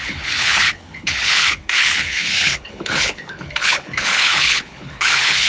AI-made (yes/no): yes